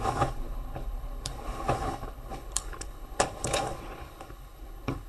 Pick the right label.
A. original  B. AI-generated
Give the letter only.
B